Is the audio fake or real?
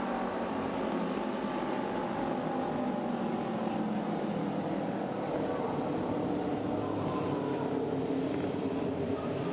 real